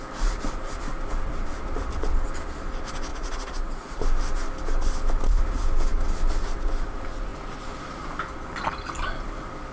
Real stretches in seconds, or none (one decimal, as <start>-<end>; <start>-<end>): 0.0-3.1; 4.0-9.7